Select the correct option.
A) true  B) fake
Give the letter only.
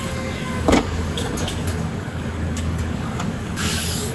B